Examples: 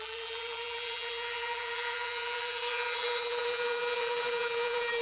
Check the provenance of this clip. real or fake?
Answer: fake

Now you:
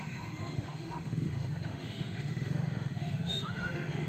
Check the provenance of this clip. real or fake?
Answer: fake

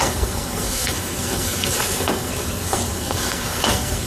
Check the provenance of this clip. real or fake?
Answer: fake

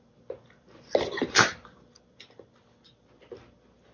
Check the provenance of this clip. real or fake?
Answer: real